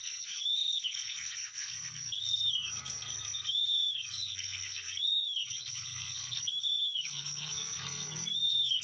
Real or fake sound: fake